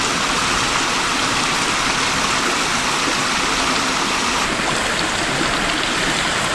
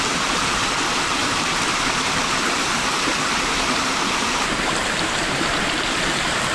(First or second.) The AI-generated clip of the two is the second